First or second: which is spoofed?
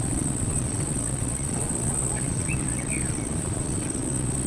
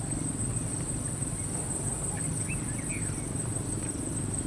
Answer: first